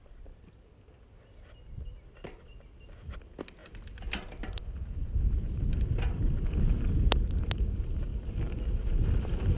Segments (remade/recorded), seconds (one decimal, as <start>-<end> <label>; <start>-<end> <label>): 0.0-9.6 recorded